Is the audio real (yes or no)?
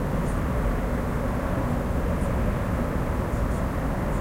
yes